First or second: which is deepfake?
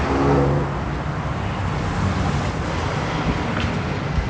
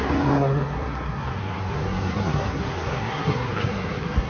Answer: second